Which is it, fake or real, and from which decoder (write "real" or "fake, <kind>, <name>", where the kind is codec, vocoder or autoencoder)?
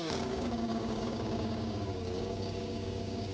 fake, codec, DAC